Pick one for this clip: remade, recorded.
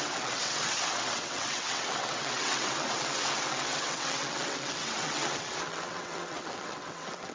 remade